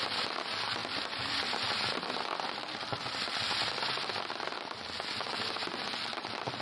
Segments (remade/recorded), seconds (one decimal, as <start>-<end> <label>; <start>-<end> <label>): 0.0-0.8 recorded; 0.8-4.8 remade; 4.8-6.6 recorded